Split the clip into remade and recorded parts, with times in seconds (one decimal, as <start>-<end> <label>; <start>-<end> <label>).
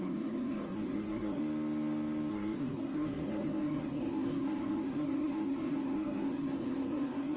0.0-1.4 remade; 1.4-2.3 recorded; 2.3-7.4 remade